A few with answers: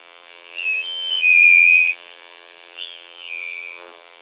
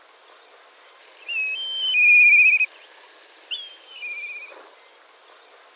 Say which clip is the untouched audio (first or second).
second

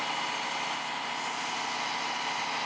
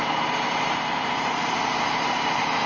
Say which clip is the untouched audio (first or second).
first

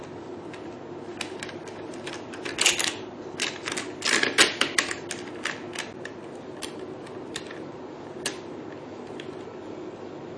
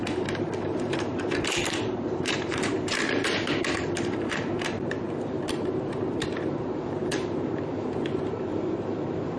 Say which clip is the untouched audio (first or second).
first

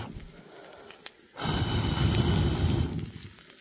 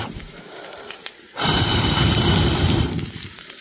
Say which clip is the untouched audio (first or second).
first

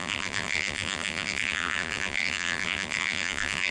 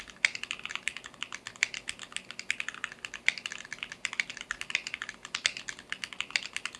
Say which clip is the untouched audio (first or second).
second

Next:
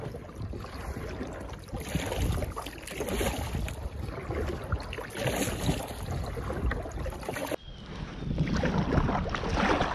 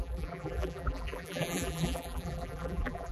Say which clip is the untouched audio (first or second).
first